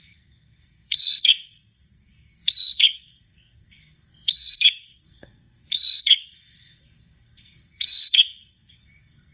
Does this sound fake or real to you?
fake